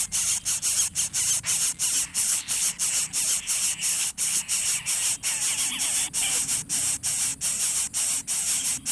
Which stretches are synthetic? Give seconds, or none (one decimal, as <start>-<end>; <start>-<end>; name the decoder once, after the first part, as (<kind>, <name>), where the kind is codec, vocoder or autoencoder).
2.1-2.7 (codec, HILCodec); 3.9-4.4